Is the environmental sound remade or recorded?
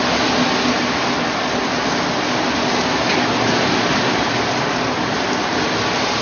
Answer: recorded